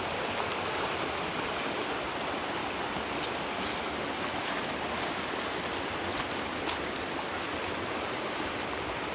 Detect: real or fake real